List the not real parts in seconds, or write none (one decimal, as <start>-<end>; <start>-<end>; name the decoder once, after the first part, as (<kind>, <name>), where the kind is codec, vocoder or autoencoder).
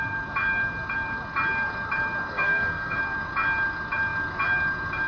2.3-3.0 (codec, SNAC)